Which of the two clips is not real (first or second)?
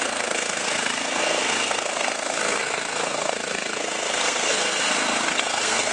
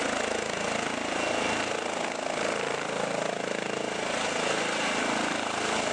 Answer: first